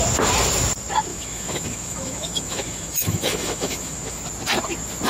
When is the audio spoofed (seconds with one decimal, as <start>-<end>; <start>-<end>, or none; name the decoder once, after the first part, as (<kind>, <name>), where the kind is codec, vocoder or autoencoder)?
1.1-4.2 (autoencoder, DAC-VAE)